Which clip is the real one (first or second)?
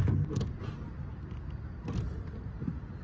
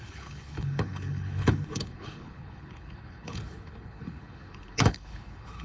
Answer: first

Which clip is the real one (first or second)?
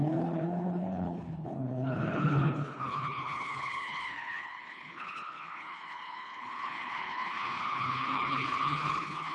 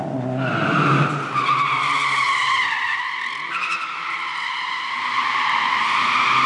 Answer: second